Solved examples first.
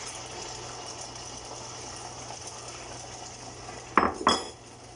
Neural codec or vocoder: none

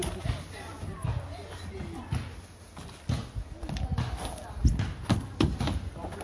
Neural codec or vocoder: none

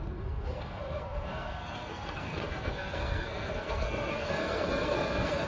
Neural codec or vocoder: codec, SNAC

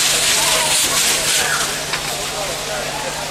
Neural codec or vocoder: none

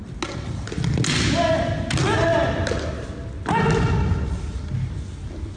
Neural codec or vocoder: none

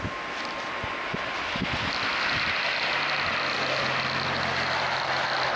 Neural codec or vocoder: none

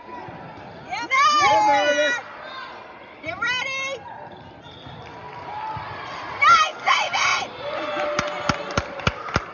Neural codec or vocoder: none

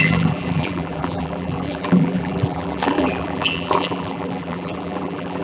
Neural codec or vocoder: vocoder, BigVGAN v2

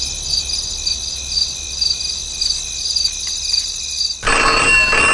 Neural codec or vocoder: none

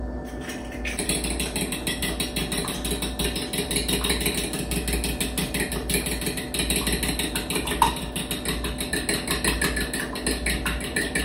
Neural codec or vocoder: none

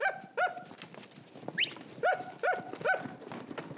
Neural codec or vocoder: none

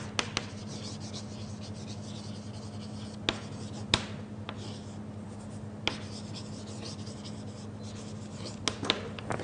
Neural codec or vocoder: none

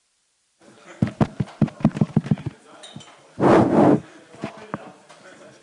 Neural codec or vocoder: vocoder, BigVGAN v2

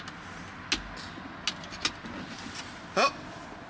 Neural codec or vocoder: none